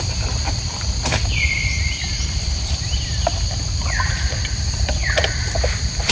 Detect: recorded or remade remade